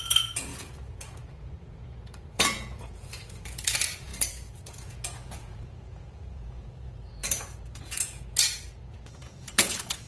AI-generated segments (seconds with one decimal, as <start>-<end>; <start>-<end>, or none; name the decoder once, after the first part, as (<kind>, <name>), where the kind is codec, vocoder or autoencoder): 0.0-10.1 (vocoder, Vocos)